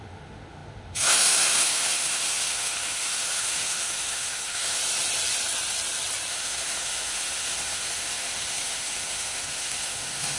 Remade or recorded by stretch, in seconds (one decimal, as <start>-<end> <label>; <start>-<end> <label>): 0.0-4.8 remade; 4.8-6.3 recorded; 6.3-10.4 remade